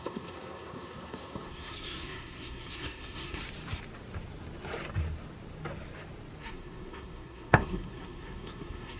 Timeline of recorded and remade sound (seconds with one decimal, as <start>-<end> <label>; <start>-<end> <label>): 0.0-3.4 remade; 3.4-6.4 recorded; 6.4-9.0 remade

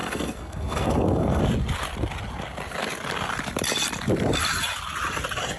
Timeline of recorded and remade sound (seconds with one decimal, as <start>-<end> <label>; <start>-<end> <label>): 0.0-1.4 remade; 1.4-5.6 recorded

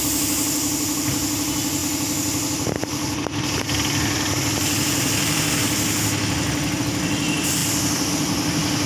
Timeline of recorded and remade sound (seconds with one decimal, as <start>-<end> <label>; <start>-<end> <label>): 0.0-8.9 recorded

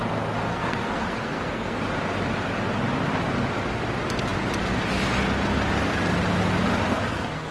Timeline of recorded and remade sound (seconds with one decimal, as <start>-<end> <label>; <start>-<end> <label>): 0.0-0.5 recorded; 0.5-1.8 remade; 1.8-6.9 recorded; 6.9-7.5 remade

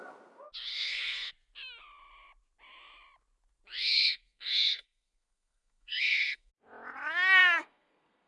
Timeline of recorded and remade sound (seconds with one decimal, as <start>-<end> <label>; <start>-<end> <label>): 0.0-0.7 recorded; 0.7-1.3 remade; 1.3-3.9 recorded; 3.9-6.5 remade; 6.5-7.4 recorded; 7.4-8.3 remade

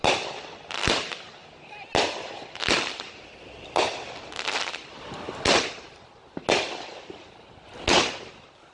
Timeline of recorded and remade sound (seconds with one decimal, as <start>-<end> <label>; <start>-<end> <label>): 0.0-8.7 recorded

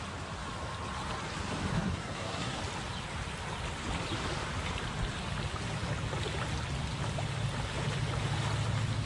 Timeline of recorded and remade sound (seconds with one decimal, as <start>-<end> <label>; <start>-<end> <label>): 0.0-1.7 recorded; 1.7-2.6 remade; 2.6-9.1 recorded